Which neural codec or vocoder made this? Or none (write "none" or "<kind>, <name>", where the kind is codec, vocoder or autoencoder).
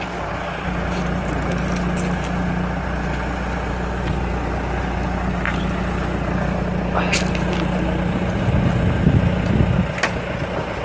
none